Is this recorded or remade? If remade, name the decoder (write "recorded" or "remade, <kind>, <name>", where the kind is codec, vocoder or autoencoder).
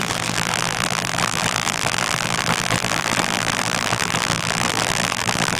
remade, vocoder, BigVGAN v2